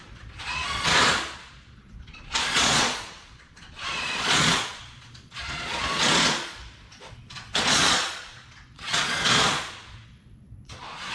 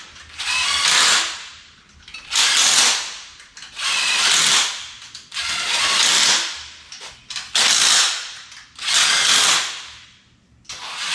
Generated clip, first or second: first